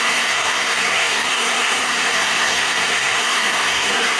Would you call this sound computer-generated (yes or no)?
yes